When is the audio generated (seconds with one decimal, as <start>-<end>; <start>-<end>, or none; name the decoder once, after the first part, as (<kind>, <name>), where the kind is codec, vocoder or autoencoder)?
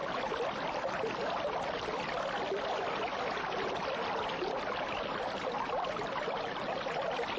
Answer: none